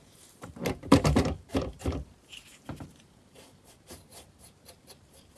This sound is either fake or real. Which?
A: fake